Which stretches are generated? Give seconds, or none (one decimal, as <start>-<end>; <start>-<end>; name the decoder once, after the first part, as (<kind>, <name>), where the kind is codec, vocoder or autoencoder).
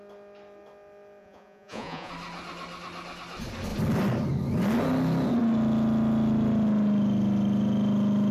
1.2-2.1 (vocoder, Vocos)